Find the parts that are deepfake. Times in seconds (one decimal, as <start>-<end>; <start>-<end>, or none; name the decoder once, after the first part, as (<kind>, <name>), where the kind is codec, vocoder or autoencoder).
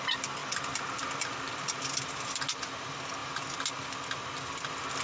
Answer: none